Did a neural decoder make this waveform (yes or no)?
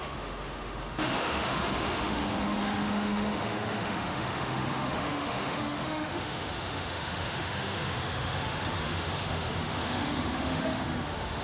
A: yes